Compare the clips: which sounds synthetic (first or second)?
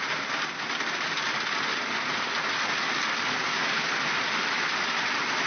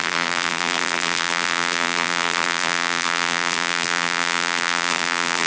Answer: second